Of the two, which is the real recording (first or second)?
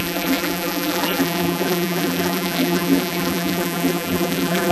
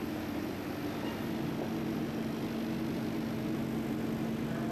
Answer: second